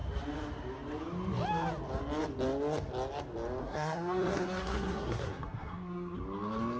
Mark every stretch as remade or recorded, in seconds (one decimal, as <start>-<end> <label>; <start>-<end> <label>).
0.0-3.6 recorded; 3.6-6.2 remade; 6.2-6.8 recorded